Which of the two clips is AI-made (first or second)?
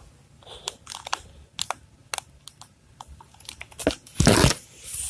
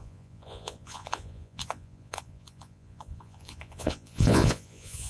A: second